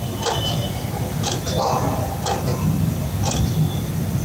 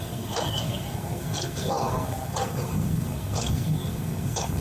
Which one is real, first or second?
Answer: first